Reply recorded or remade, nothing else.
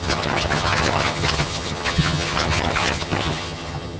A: remade